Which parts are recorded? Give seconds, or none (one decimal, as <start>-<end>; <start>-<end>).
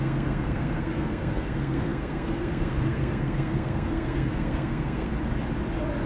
5.1-6.1